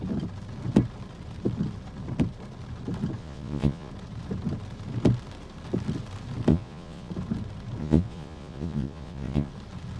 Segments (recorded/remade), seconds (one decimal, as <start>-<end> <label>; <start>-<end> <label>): 0.0-3.2 recorded; 3.2-3.9 remade; 3.9-6.5 recorded; 6.5-7.1 remade; 7.1-7.8 recorded; 7.8-9.5 remade; 9.5-10.0 recorded